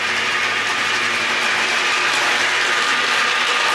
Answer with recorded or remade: recorded